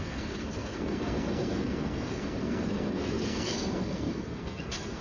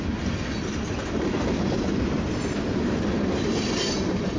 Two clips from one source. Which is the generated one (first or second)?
first